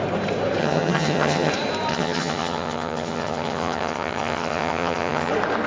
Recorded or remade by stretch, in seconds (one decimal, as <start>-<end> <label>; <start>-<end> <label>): 0.0-0.6 recorded; 0.6-1.5 remade; 1.5-1.9 recorded; 1.9-5.3 remade; 5.3-5.7 recorded